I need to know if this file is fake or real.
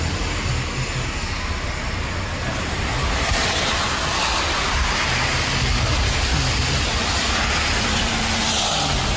real